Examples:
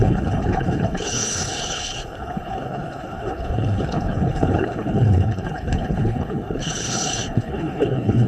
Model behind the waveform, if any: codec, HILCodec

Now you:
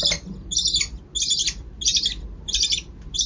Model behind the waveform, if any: none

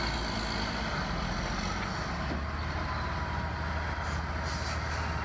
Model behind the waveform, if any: none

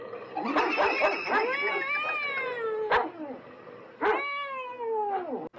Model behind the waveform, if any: none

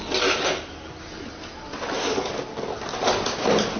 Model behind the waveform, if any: none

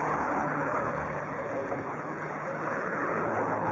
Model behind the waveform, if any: codec, HILCodec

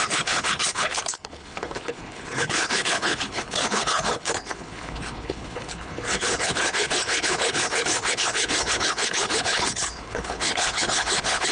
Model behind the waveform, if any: codec, HILCodec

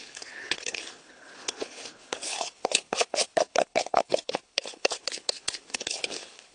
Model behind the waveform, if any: codec, HILCodec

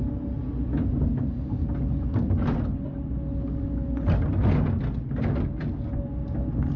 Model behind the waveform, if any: none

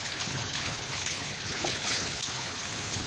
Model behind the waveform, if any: codec, HILCodec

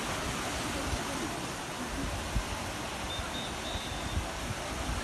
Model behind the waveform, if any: none